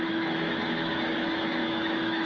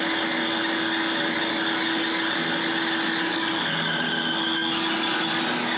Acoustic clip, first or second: second